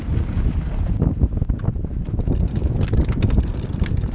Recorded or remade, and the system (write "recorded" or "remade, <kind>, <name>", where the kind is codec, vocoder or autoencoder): recorded